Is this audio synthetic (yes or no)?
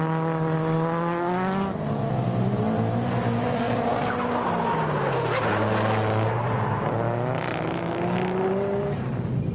no